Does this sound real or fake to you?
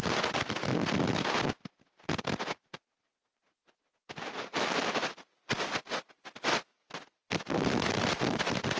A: real